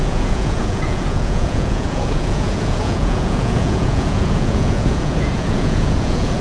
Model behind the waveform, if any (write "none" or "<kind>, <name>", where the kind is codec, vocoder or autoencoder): vocoder, Vocos